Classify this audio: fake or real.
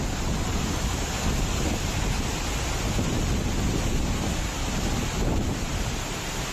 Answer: real